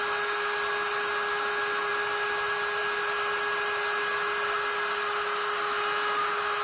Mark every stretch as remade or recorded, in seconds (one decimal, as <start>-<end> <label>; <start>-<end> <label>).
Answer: 0.0-6.6 recorded